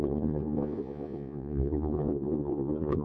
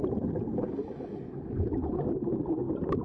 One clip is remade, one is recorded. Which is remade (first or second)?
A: first